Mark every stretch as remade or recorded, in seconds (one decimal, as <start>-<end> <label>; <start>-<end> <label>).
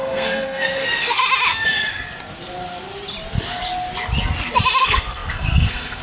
0.0-1.2 remade; 1.2-4.8 recorded; 4.8-6.0 remade